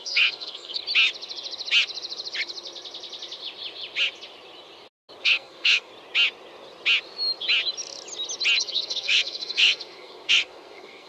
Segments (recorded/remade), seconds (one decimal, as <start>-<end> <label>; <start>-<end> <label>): 0.0-0.8 remade; 0.8-5.2 recorded; 5.2-5.9 remade; 5.9-8.6 recorded; 8.6-11.1 remade